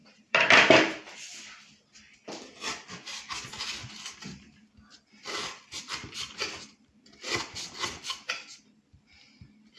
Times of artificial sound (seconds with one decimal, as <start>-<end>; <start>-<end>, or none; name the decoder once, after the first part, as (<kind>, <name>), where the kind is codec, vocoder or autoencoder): 0.0-1.0 (vocoder, BigVGAN v2)